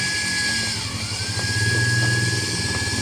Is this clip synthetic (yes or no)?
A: no